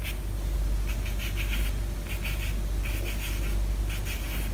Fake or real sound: real